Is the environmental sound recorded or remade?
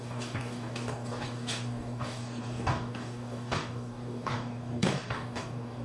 remade